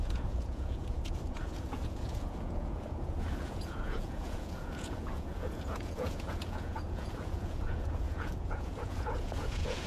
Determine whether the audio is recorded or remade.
remade